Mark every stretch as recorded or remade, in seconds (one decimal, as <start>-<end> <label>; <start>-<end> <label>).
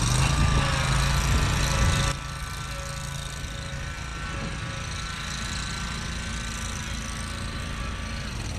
0.0-8.6 recorded